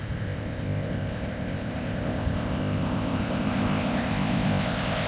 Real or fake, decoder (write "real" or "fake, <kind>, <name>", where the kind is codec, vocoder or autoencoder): fake, codec, ZipCodec